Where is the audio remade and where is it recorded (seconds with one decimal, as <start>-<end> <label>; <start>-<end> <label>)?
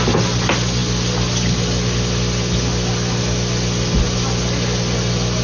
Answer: 0.0-5.4 recorded